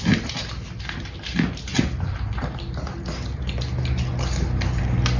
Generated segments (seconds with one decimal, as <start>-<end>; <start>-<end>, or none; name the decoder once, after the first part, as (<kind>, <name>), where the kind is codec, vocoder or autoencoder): none